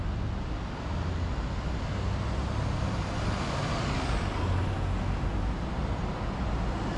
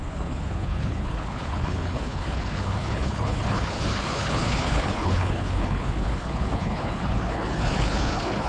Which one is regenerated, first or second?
second